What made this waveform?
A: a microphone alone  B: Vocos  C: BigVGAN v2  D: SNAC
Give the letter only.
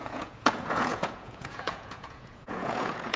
B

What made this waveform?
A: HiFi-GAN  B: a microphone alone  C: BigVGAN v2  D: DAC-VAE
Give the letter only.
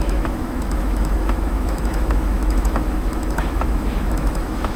D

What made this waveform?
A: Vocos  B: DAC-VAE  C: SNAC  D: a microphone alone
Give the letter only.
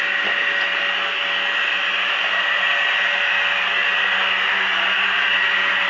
D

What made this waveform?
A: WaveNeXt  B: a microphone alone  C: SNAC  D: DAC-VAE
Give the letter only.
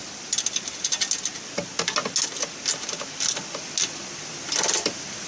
B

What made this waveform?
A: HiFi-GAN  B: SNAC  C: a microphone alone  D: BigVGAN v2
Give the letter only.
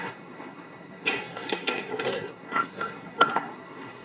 B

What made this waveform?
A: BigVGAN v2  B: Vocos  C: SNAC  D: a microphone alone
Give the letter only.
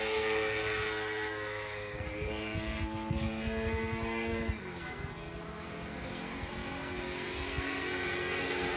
C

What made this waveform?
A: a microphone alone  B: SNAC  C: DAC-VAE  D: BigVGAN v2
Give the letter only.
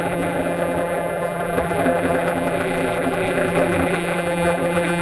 D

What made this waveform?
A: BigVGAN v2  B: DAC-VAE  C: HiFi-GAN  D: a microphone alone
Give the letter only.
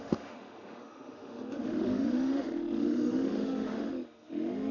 B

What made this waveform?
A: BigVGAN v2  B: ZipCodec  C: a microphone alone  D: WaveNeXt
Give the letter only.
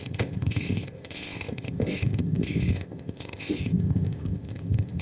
B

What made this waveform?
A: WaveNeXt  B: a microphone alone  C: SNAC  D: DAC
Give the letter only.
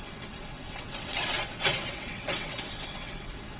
A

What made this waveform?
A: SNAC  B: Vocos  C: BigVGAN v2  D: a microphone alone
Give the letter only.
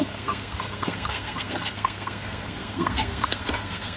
A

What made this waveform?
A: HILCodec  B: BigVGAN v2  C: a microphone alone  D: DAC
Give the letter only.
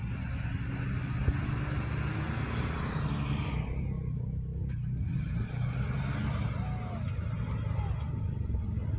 C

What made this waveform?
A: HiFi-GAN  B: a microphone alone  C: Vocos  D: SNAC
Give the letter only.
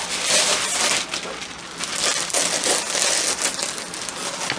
B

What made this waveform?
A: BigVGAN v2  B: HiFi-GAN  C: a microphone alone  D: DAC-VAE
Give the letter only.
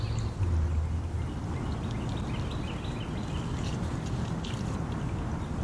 C